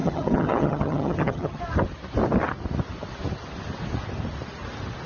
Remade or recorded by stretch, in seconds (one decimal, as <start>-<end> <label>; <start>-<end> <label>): 0.0-1.6 remade; 1.6-5.1 recorded

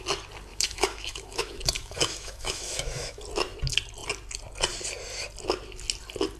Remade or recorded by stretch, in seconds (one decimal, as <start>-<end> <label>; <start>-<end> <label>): 0.0-0.5 recorded; 0.5-3.2 remade; 3.2-6.4 recorded

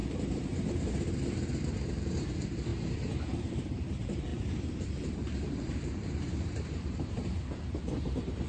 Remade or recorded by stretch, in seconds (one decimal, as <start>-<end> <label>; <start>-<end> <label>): 0.0-8.5 remade